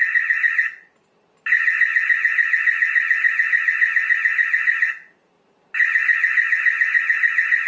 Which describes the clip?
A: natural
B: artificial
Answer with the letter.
A